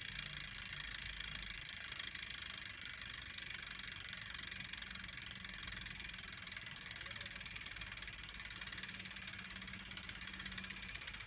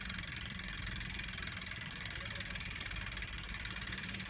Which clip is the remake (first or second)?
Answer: second